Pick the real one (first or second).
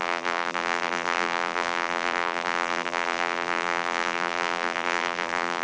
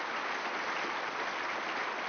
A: second